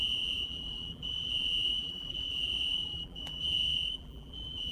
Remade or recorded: remade